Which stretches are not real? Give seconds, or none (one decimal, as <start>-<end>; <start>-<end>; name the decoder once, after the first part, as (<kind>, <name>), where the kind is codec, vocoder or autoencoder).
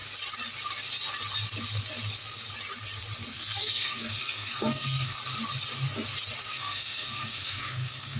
3.3-5.2 (codec, SNAC); 6.5-8.2